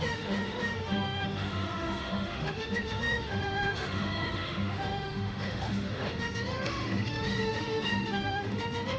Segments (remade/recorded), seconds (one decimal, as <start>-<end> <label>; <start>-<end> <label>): 0.0-9.0 remade